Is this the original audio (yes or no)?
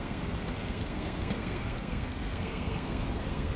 no